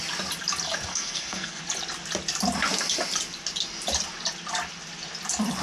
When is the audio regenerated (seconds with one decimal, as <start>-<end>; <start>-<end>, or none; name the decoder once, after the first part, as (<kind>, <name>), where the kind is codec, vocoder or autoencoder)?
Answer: 0.9-1.6 (codec, SNAC)